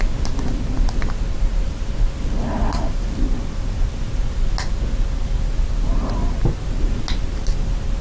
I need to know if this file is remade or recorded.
recorded